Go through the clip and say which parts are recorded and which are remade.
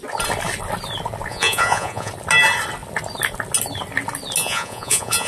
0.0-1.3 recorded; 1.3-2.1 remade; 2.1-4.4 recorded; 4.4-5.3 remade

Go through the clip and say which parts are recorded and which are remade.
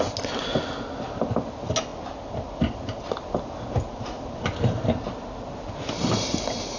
0.0-6.8 recorded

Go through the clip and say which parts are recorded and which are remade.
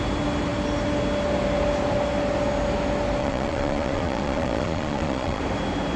0.0-3.2 recorded; 3.2-5.4 remade; 5.4-6.0 recorded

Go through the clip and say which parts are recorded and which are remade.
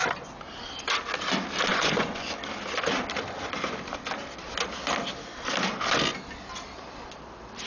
0.0-1.7 recorded; 1.7-2.3 remade; 2.3-7.7 recorded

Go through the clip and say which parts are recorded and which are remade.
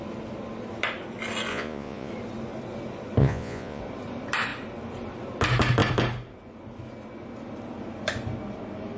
0.0-1.5 recorded; 1.5-2.1 remade; 2.1-3.2 recorded; 3.2-3.8 remade; 3.8-9.0 recorded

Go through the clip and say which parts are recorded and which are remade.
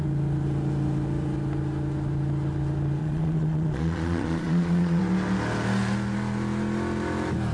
0.0-3.0 recorded; 3.0-5.0 remade; 5.0-7.5 recorded